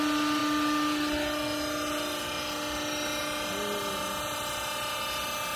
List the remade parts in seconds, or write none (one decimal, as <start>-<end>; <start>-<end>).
none

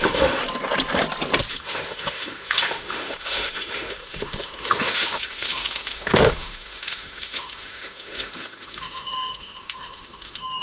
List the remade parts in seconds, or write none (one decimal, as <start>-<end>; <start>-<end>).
0.0-0.4; 1.5-10.6

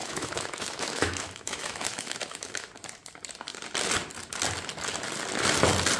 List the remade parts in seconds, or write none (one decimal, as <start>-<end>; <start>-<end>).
0.0-2.7

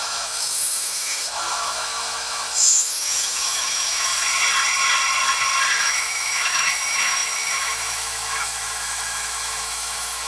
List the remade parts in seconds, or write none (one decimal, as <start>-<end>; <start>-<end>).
0.0-4.1; 5.8-10.3

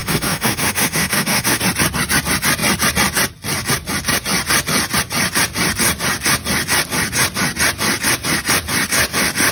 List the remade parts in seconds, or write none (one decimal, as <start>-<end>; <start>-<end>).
0.0-1.6

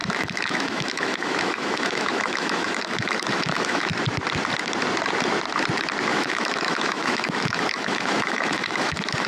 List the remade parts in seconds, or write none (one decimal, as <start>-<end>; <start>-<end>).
0.0-3.9; 6.1-9.3